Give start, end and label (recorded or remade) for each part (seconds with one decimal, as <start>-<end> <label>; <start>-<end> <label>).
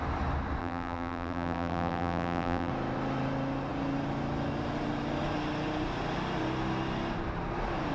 0.0-0.6 recorded; 0.6-2.7 remade; 2.7-7.9 recorded